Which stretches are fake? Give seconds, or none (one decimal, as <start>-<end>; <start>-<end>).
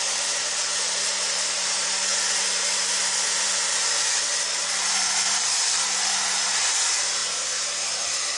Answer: 0.0-2.1; 5.3-7.2; 8.0-8.4